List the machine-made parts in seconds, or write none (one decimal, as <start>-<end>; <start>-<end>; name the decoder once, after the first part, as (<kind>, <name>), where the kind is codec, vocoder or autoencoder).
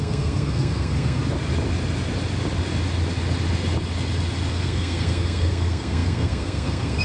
0.0-1.2 (codec, SNAC); 4.5-7.0